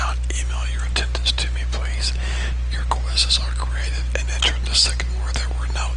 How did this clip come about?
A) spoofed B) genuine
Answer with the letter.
B